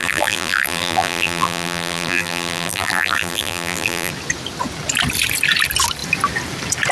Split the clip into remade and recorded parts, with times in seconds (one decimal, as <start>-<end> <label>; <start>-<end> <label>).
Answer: 0.0-4.1 remade; 4.1-6.9 recorded